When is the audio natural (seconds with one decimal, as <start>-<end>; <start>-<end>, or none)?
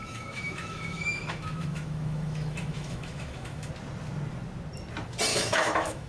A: 3.7-5.3